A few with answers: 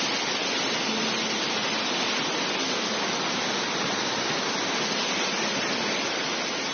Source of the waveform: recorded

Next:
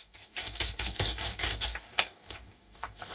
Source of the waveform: remade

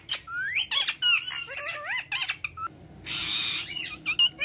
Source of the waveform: recorded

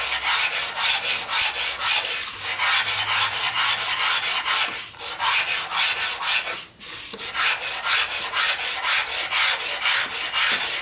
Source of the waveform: recorded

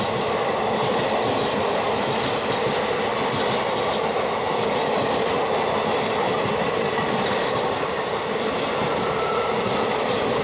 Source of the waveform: recorded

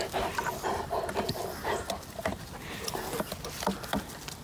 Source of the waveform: recorded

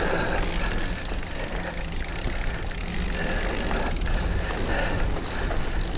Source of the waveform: recorded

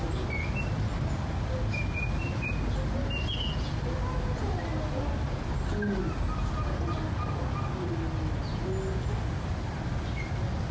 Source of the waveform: recorded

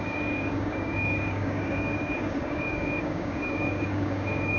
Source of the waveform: remade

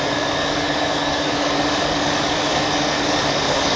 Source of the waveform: remade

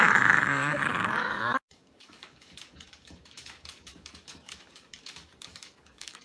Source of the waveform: remade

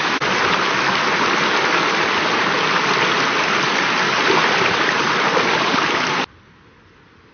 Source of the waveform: recorded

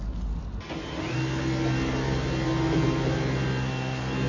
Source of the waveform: recorded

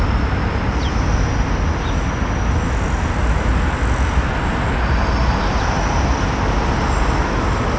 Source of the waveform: recorded